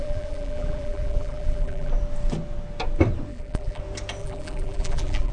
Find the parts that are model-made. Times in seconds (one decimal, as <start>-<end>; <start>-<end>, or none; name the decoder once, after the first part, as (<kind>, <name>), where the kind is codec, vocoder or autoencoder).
0.0-1.9 (vocoder, BigVGAN v2); 3.3-3.8; 4.2-5.3